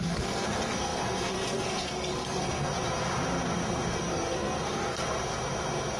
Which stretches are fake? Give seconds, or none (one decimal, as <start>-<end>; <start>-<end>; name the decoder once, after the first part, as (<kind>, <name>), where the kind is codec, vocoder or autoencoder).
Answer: 0.0-2.7 (codec, SNAC); 4.0-5.0